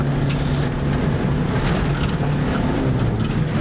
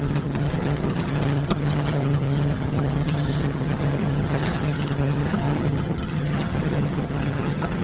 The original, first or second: first